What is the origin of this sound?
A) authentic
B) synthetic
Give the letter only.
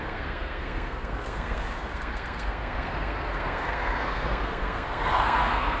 B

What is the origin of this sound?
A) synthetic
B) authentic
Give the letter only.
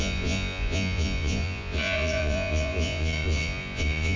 A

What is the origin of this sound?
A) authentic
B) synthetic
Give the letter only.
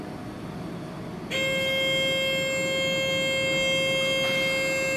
A